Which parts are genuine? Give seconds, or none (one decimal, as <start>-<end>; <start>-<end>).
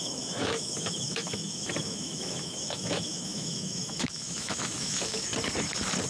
5.3-6.1